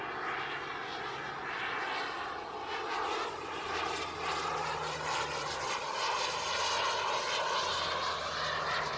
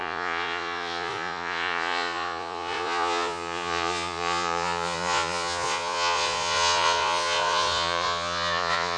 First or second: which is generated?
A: second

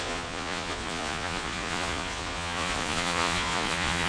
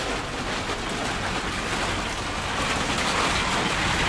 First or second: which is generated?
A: first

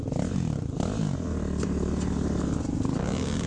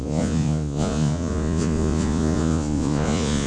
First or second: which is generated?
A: second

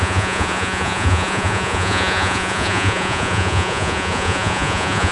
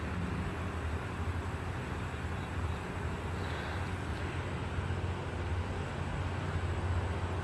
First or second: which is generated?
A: first